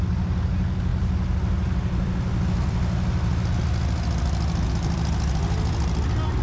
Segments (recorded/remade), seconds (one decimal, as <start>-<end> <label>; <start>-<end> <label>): 0.0-6.4 recorded